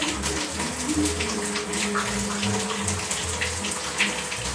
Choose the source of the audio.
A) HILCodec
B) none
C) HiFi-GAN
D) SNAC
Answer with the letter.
B